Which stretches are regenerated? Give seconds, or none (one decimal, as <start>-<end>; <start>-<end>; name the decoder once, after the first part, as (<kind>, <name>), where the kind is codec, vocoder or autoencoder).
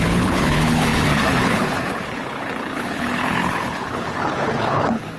0.0-5.2 (codec, HILCodec)